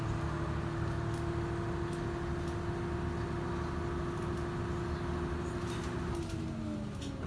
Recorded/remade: recorded